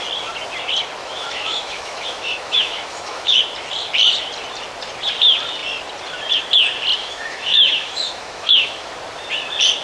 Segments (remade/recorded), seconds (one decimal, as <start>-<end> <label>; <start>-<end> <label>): 0.0-1.0 recorded; 1.0-3.4 remade; 3.4-7.0 recorded; 7.0-8.9 remade; 8.9-9.8 recorded